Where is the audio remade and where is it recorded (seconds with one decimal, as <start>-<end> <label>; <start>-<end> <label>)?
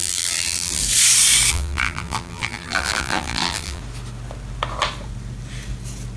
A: 0.0-0.8 remade; 0.8-1.5 recorded; 1.5-3.8 remade; 3.8-6.2 recorded